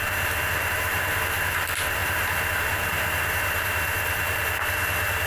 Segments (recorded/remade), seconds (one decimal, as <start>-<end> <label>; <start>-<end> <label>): 0.0-5.3 remade